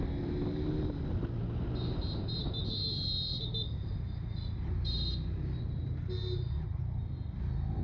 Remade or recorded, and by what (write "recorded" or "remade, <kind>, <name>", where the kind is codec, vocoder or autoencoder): recorded